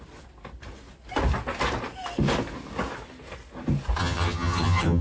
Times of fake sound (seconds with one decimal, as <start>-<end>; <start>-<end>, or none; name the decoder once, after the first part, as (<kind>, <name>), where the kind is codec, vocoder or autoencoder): 4.0-5.0 (vocoder, HiFi-GAN)